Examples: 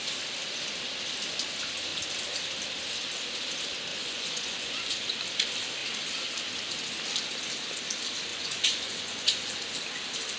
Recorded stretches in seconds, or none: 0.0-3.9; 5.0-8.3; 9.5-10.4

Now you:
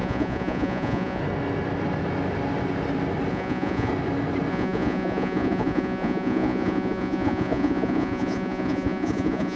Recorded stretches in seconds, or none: 1.2-3.3; 3.9-4.5